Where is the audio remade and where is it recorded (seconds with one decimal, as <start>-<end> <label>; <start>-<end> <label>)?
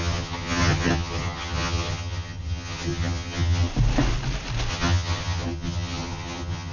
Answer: 0.0-3.7 remade; 3.7-4.7 recorded; 4.7-6.7 remade